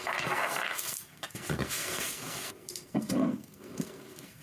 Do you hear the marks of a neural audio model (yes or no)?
yes